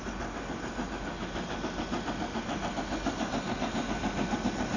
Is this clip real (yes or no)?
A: yes